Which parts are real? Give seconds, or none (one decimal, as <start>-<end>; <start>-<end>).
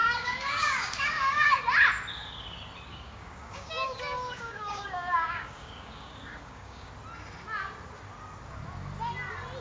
1.6-2.9; 6.9-9.6